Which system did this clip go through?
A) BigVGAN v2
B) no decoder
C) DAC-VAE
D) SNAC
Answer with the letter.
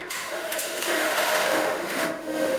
C